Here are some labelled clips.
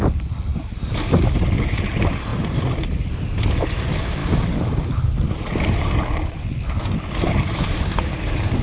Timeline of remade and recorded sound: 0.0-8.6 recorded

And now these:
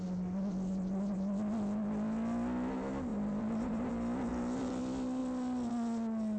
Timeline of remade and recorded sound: 0.0-3.1 recorded; 3.1-3.9 remade; 3.9-4.3 recorded; 4.3-4.8 remade; 4.8-6.4 recorded

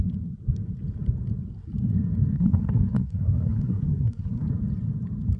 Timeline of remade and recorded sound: 0.0-2.3 recorded; 2.3-4.5 remade; 4.5-5.4 recorded

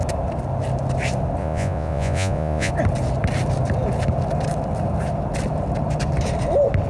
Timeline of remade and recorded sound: 0.0-1.4 recorded; 1.4-2.7 remade; 2.7-6.9 recorded

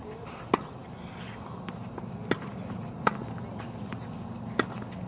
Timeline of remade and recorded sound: 0.0-5.1 recorded

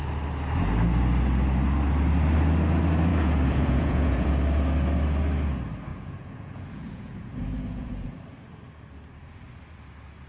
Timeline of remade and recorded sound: 0.0-3.1 recorded; 3.1-4.3 remade; 4.3-5.9 recorded; 5.9-8.1 remade; 8.1-10.3 recorded

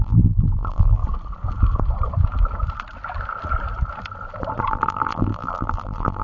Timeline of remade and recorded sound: 0.0-1.0 remade; 1.0-4.7 recorded; 4.7-6.2 remade